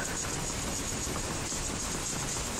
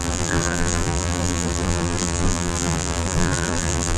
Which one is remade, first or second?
second